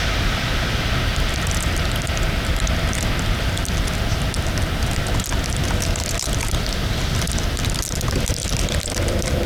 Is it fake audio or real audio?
real